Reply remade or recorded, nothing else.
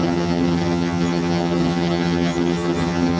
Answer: remade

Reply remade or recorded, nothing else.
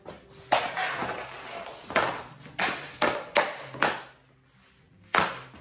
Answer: recorded